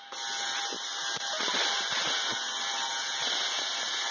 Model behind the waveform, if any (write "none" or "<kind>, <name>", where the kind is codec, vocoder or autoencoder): none